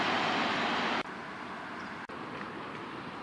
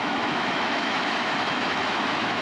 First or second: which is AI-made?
second